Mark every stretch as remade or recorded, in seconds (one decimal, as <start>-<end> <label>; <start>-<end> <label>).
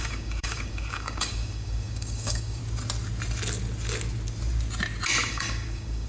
0.0-2.6 remade; 2.6-5.3 recorded; 5.3-6.1 remade